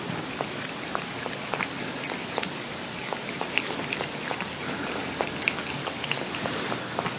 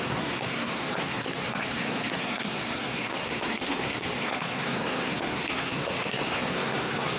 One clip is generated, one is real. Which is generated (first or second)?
second